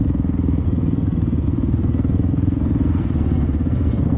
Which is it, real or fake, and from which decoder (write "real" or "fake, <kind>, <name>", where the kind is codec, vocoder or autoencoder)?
fake, codec, SNAC